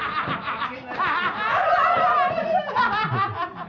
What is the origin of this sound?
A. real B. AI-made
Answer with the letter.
B